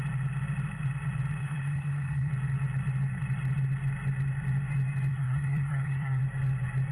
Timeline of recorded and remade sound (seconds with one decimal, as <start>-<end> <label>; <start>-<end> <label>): 0.0-1.4 recorded; 1.4-2.3 remade; 2.3-5.1 recorded; 5.1-6.2 remade; 6.2-6.9 recorded